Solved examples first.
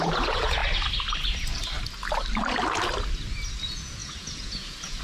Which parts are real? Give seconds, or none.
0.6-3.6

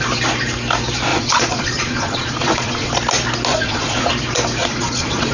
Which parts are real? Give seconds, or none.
0.0-1.1; 2.9-3.5; 4.1-4.6

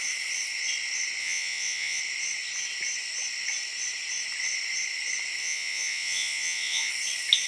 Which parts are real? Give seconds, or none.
0.0-1.2; 2.0-5.4; 6.9-7.5

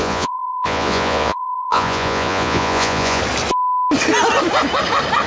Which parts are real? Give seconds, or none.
3.2-5.3

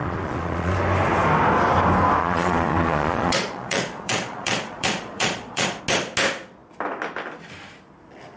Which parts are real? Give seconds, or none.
0.7-2.2; 5.8-8.4